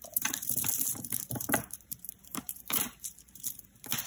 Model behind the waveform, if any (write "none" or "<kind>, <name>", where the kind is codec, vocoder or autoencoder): vocoder, BigVGAN v2